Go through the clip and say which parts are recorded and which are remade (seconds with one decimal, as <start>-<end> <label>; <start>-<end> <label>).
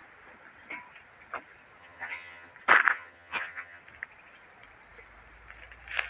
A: 0.0-1.8 recorded; 1.8-2.5 remade; 2.5-2.9 recorded; 2.9-3.8 remade; 3.8-6.1 recorded